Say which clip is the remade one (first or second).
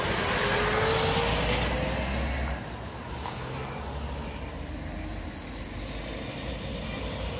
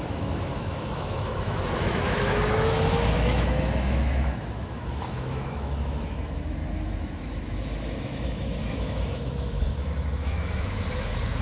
second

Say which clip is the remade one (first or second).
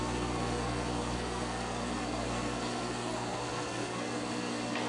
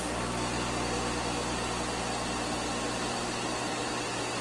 first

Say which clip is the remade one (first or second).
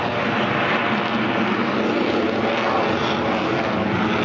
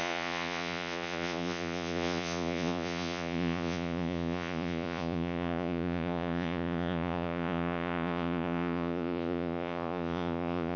second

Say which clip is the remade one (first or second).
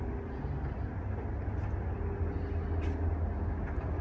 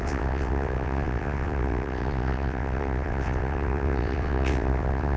second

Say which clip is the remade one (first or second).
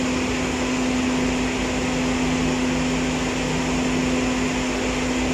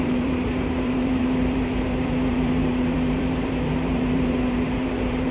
second